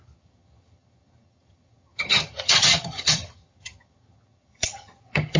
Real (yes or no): no